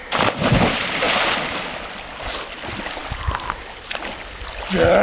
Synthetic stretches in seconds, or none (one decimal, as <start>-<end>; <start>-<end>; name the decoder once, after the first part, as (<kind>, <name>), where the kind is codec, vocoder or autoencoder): none